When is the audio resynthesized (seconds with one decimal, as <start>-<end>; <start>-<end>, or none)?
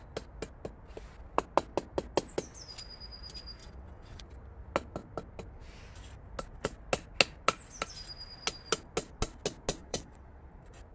3.6-4.2; 9.8-10.4